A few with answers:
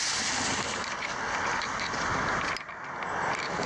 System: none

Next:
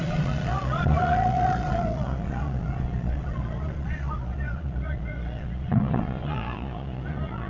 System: vocoder, Vocos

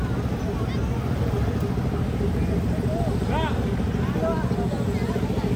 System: none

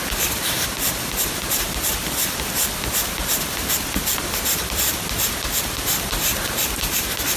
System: vocoder, BigVGAN v2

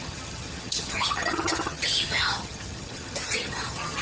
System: vocoder, HiFi-GAN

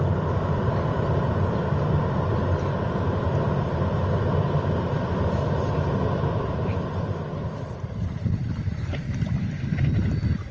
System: vocoder, BigVGAN v2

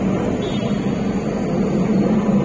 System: none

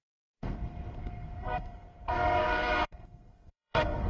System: codec, SNAC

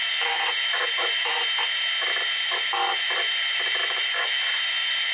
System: none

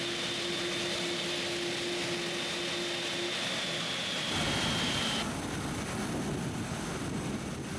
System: none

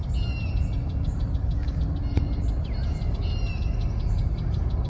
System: none